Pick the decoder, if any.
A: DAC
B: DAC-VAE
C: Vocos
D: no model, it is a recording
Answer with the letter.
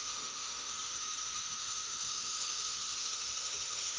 B